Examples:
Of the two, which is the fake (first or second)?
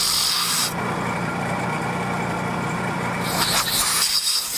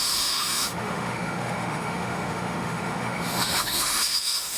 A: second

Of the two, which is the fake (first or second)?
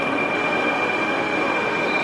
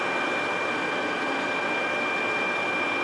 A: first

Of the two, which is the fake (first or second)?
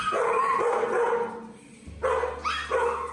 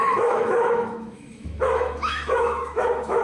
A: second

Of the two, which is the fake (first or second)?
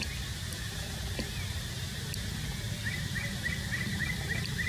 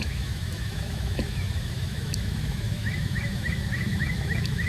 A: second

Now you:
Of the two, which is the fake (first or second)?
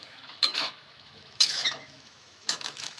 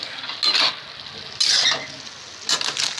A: first